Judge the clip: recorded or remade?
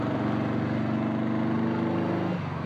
recorded